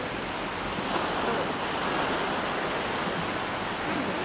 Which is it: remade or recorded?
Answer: recorded